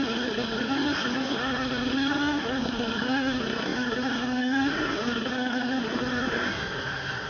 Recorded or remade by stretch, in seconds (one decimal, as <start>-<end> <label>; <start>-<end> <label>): 0.0-7.3 remade